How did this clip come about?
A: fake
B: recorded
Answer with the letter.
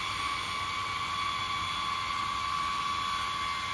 B